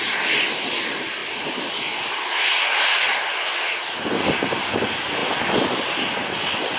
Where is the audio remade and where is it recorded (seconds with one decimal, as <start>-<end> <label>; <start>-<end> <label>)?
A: 0.0-6.8 recorded